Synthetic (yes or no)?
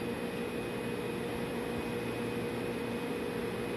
no